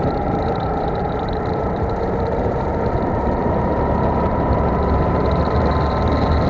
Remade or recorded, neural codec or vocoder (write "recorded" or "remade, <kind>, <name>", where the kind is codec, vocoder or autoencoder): remade, vocoder, BigVGAN v2